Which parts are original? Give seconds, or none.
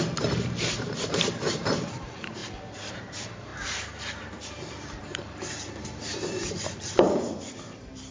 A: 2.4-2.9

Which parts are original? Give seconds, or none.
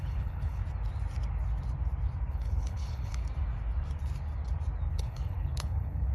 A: 0.6-2.3; 3.2-4.9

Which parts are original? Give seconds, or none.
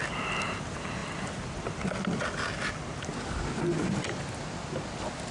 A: 0.0-5.3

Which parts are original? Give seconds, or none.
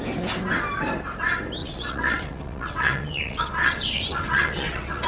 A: 0.0-1.6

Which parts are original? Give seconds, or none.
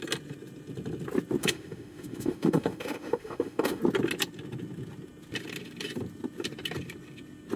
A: 0.0-1.4; 3.8-7.6